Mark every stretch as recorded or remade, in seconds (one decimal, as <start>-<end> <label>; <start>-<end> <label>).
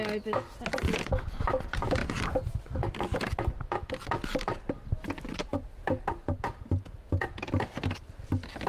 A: 0.0-5.4 recorded; 5.4-7.5 remade; 7.5-8.7 recorded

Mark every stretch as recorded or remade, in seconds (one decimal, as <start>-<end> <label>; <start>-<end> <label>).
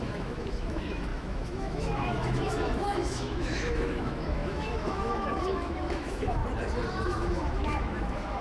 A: 0.0-6.4 remade; 6.4-6.9 recorded; 6.9-8.4 remade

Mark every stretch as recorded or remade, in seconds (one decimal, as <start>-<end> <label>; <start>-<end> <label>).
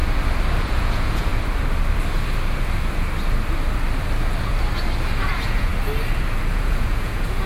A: 0.0-0.6 recorded; 0.6-1.3 remade; 1.3-5.2 recorded; 5.2-5.7 remade; 5.7-6.5 recorded; 6.5-7.5 remade